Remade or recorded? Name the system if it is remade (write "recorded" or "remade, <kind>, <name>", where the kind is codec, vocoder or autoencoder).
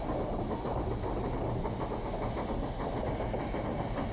recorded